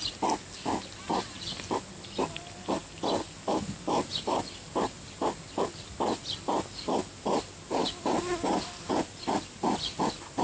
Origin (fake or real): real